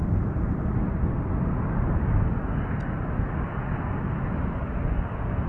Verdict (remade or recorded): recorded